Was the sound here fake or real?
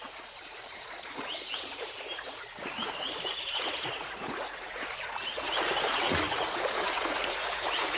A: fake